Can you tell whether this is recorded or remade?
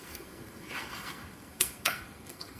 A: remade